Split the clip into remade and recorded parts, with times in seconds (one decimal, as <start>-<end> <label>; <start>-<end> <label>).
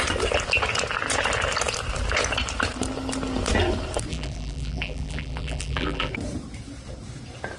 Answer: 0.0-4.1 recorded; 4.1-6.1 remade; 6.1-7.6 recorded